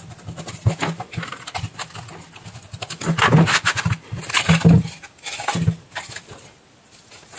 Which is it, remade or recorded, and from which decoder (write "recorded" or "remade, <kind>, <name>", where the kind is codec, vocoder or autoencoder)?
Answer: recorded